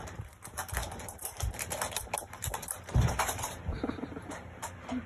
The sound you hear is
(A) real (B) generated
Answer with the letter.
B